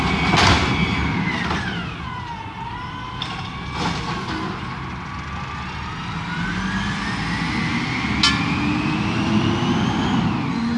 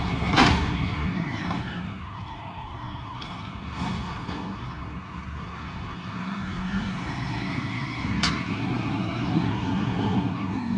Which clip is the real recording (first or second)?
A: first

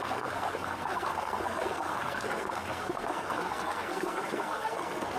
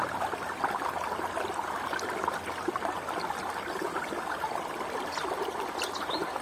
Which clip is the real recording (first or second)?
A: second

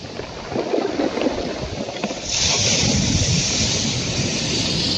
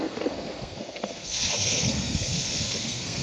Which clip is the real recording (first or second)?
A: first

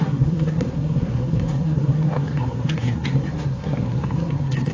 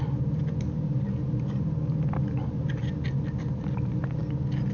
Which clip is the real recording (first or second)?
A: second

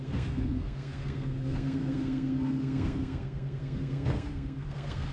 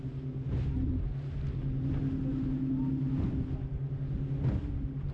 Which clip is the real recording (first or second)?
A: second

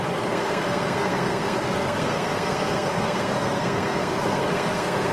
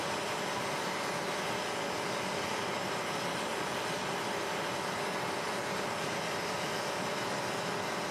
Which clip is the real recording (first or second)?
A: second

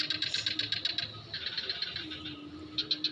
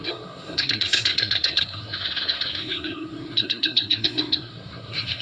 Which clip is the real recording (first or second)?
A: first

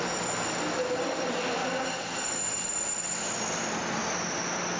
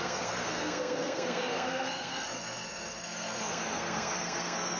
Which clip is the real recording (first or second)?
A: first